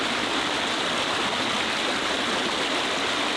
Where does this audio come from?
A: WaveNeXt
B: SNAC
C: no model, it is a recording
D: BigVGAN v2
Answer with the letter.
C